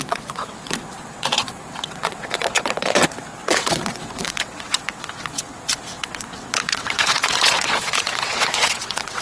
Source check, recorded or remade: remade